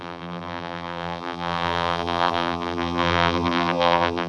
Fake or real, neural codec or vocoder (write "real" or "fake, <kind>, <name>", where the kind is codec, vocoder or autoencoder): fake, vocoder, BigVGAN v2